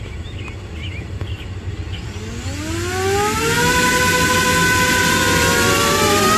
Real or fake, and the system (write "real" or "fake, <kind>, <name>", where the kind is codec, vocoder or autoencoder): real